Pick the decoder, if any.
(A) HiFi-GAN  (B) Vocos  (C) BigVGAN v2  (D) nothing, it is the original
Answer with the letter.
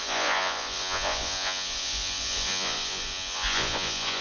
B